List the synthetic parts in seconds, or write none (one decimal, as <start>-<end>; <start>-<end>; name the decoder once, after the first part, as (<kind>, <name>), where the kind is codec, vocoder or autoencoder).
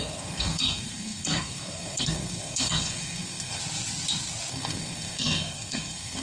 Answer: 0.0-3.6 (codec, SNAC); 4.5-6.2